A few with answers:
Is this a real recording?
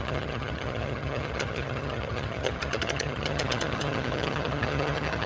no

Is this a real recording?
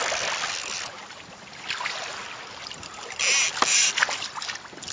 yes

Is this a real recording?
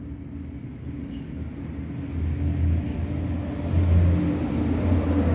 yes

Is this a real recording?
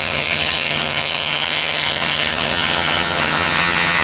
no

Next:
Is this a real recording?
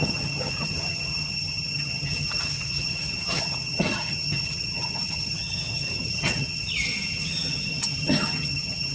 no